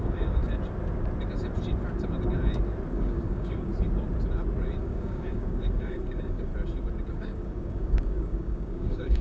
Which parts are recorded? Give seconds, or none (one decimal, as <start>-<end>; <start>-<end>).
0.4-2.9; 3.7-4.8; 6.5-7.1